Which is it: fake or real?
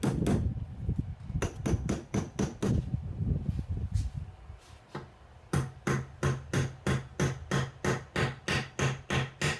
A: real